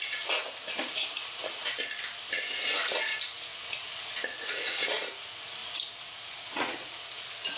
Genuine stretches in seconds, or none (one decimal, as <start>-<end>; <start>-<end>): 1.8-2.8